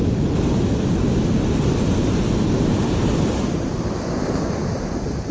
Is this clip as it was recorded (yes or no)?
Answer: yes